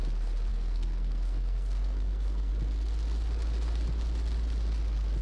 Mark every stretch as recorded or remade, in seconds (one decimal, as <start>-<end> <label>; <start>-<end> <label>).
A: 0.0-0.5 recorded; 0.5-2.5 remade; 2.5-5.2 recorded